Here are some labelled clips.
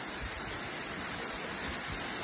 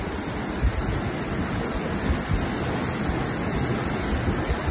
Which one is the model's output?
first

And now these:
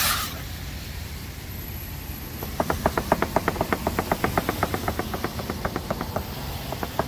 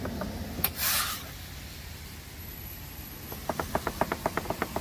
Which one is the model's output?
first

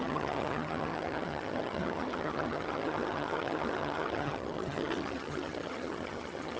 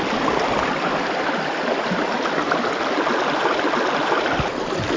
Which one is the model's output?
first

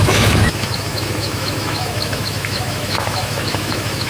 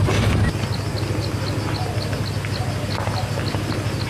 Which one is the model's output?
first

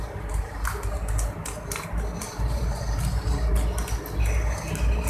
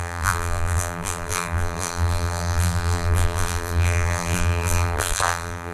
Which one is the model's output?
second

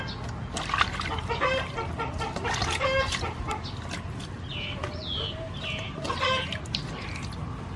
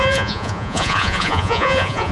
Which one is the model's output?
second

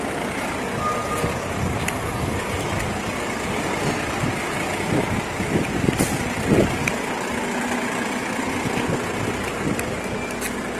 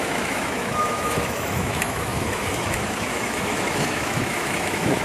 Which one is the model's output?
second